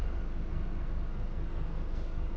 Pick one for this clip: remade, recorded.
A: remade